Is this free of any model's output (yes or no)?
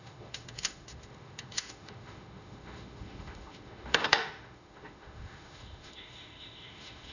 no